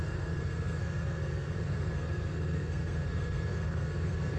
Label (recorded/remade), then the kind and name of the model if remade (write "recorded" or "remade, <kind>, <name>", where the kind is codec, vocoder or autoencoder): remade, codec, SNAC